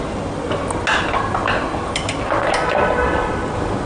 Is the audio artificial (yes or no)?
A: no